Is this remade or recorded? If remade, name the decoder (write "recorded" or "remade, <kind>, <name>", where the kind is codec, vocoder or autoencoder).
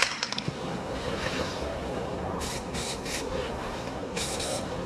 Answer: remade, codec, SNAC